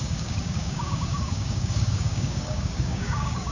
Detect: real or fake fake